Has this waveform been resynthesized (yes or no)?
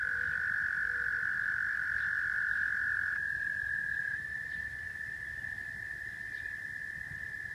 no